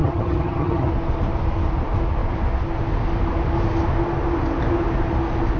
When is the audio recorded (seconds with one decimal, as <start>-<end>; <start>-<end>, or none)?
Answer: 0.9-5.6